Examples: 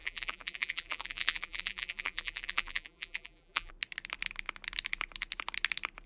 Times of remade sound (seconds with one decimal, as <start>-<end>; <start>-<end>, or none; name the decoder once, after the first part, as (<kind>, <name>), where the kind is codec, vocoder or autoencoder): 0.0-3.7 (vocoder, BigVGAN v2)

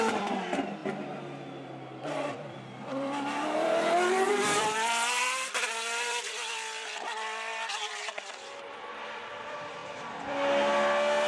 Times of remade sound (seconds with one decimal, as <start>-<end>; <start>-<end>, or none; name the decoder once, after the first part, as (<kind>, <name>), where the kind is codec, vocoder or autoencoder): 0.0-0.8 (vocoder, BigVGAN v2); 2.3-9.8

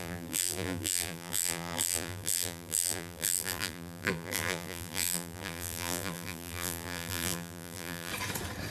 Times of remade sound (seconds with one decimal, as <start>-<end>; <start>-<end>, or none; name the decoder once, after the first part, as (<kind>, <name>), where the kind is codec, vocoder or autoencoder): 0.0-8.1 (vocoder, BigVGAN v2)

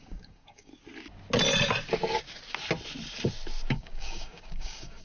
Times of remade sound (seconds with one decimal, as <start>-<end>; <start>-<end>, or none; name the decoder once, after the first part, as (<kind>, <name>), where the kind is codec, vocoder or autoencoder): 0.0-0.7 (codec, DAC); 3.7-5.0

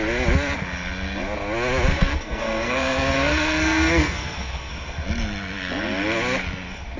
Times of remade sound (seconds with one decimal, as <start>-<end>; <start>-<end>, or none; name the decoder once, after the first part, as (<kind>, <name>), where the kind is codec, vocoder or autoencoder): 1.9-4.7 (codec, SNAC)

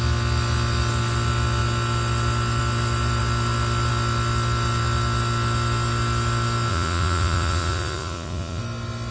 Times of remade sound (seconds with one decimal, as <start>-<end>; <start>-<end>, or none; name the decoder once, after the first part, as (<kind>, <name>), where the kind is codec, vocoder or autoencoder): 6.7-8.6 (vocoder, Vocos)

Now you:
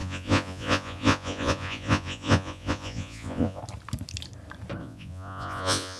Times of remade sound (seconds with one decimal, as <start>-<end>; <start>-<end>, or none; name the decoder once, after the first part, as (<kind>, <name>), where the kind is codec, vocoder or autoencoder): 0.0-3.6 (vocoder, Vocos); 4.8-6.0

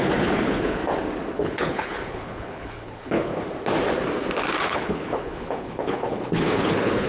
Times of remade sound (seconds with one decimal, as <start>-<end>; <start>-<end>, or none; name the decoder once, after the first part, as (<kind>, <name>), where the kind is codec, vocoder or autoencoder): 0.0-0.8 (codec, HILCodec); 1.3-3.3; 4.6-7.1